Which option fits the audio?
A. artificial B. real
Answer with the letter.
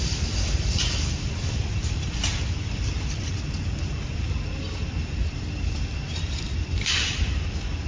A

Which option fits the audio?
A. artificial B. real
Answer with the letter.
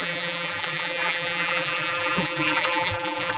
A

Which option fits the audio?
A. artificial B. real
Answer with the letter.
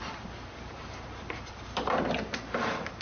A